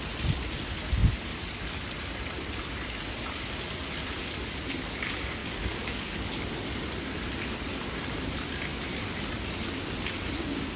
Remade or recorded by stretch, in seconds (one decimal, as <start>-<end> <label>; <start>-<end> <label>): 0.0-5.4 recorded; 5.4-6.3 remade; 6.3-10.8 recorded